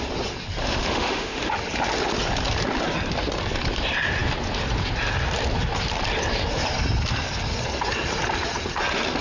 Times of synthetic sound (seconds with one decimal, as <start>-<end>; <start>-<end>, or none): 0.6-1.5